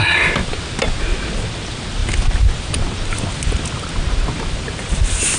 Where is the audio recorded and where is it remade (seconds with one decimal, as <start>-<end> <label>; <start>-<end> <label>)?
0.0-5.4 recorded